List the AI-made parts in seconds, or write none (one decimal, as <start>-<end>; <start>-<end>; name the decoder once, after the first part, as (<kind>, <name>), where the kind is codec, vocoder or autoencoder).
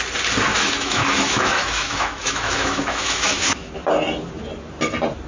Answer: 0.5-3.7 (autoencoder, DAC-VAE)